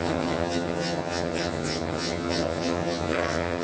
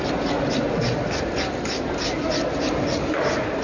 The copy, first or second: first